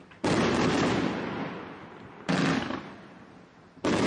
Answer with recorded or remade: recorded